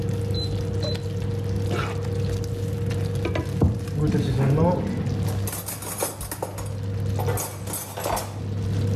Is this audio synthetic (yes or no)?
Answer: no